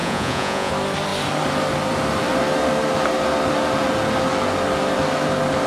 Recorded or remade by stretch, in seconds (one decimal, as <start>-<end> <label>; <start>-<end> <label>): 0.0-0.7 remade; 0.7-5.7 recorded